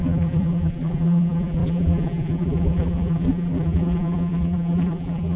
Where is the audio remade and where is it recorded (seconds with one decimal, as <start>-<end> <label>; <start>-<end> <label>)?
0.0-5.4 remade